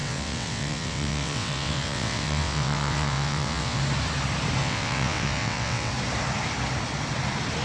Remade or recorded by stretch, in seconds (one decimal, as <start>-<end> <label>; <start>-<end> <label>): 0.0-3.8 remade; 3.8-4.6 recorded; 4.6-5.9 remade; 5.9-7.6 recorded